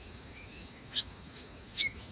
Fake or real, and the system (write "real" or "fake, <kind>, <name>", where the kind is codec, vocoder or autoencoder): fake, autoencoder, DAC-VAE